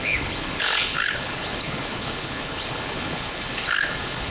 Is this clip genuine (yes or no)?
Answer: no